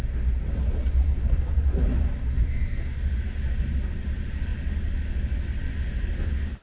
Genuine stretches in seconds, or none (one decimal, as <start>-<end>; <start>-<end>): 0.0-6.6